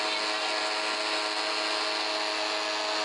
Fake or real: real